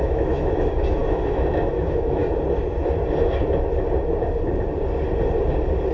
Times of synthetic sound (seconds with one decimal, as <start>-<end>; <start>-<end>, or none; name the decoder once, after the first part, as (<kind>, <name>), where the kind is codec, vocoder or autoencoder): 0.0-2.2 (autoencoder, DAC-VAE)